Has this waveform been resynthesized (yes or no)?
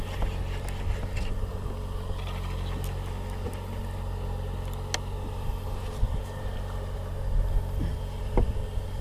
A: no